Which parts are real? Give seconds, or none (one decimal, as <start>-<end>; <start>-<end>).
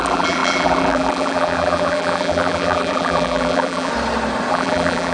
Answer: 3.9-4.5